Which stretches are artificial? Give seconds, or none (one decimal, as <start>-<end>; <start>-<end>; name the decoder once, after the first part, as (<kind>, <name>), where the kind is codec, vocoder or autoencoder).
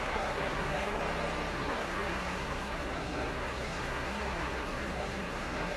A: 0.0-1.0 (codec, SNAC); 1.5-5.8